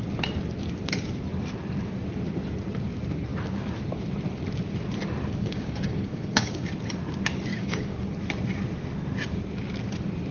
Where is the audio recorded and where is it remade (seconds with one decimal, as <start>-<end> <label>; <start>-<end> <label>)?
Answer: 0.0-5.4 recorded; 5.4-6.7 remade; 6.7-7.5 recorded; 7.5-8.1 remade; 8.1-10.3 recorded